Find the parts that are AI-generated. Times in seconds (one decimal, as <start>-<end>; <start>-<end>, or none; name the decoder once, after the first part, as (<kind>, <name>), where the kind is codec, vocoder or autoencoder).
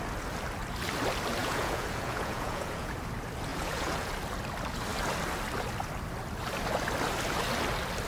1.4-2.9 (vocoder, Vocos); 3.5-4.1